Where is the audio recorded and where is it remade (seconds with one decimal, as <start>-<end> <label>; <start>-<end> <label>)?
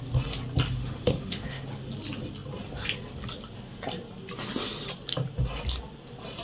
0.0-0.8 recorded; 0.8-1.6 remade; 1.6-6.4 recorded